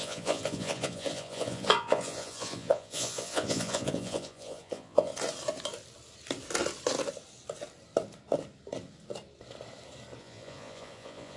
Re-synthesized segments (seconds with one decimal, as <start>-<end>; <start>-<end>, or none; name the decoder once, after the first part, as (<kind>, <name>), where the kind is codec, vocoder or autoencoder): 0.0-5.1 (vocoder, Vocos); 10.2-11.4